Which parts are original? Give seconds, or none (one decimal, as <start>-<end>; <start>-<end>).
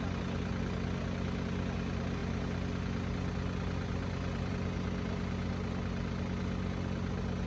0.0-7.5